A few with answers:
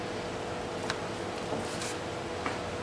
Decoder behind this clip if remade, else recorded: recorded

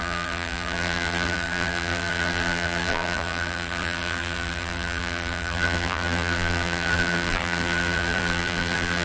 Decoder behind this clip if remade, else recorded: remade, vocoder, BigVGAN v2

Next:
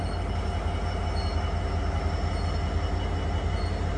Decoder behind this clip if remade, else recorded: recorded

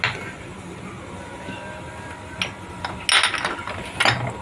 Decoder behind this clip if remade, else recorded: recorded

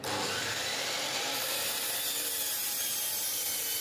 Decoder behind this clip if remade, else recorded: remade, vocoder, BigVGAN v2